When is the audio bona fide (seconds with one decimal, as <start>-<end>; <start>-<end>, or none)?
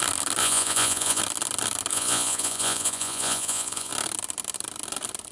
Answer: 0.0-0.4; 1.2-1.9; 3.9-5.3